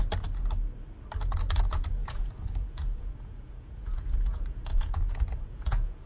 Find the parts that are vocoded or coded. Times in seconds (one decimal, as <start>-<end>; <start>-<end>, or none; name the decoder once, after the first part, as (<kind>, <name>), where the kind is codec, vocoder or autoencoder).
2.0-6.1 (vocoder, Vocos)